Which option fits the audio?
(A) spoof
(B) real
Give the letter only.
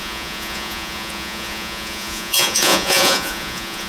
A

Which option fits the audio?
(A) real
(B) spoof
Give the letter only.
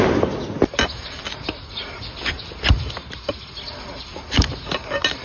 A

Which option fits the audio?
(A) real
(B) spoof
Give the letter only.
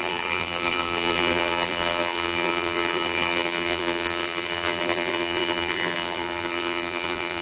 B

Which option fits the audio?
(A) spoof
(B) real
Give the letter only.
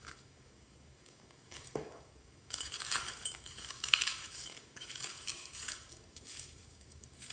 A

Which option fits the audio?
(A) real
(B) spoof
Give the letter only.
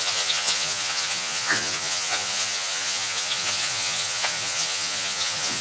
B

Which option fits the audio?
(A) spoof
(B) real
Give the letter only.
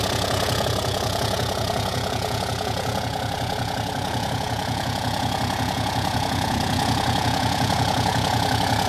A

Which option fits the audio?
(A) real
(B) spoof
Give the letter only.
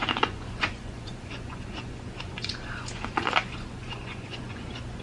B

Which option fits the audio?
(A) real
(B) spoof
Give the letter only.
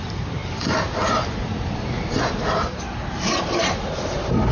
A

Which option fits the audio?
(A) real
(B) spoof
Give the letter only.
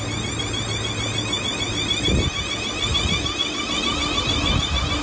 A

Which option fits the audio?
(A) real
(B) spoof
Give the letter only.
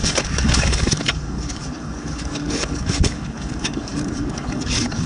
B